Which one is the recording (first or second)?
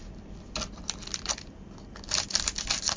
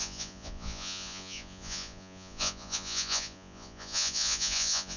first